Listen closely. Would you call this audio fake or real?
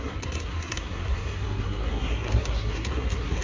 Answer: fake